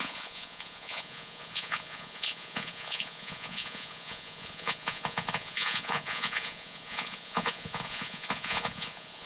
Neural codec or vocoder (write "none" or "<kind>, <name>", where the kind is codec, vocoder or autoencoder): vocoder, Vocos